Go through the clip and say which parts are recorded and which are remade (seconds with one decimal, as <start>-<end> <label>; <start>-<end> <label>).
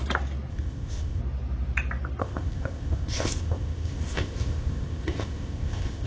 0.0-0.5 recorded; 0.5-1.2 remade; 1.2-2.2 recorded; 2.2-6.1 remade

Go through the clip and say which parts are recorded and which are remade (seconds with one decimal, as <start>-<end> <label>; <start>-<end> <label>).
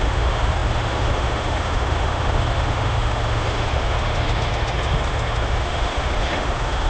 0.0-6.9 remade